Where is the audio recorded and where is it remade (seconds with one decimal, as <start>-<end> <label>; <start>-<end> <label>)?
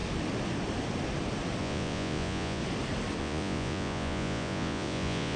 0.0-1.6 recorded; 1.6-2.6 remade; 2.6-3.2 recorded; 3.2-5.4 remade